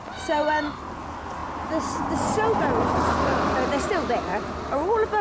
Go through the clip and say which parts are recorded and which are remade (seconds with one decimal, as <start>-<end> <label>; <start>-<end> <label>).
0.0-5.2 recorded